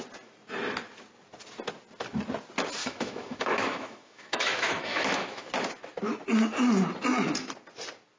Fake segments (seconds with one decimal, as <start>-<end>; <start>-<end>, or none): 2.8-5.5